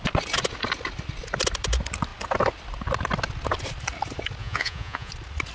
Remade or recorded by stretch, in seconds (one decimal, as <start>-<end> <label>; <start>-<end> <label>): 0.0-4.4 recorded; 4.4-5.1 remade; 5.1-5.5 recorded